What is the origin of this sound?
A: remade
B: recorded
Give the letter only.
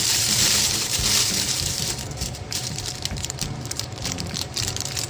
A